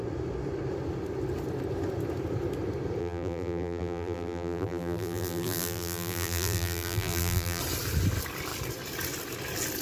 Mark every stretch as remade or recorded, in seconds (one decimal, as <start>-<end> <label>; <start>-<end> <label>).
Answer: 0.0-3.0 recorded; 3.0-7.6 remade; 7.6-9.8 recorded